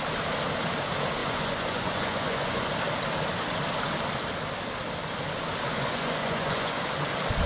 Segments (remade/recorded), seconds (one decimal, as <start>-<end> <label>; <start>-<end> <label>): 0.0-1.2 recorded; 1.2-2.7 remade; 2.7-5.7 recorded; 5.7-6.8 remade; 6.8-7.5 recorded